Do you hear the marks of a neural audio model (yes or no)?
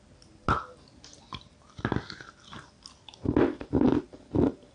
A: no